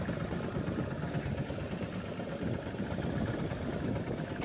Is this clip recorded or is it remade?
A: recorded